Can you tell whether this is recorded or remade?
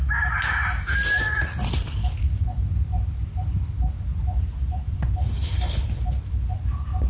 recorded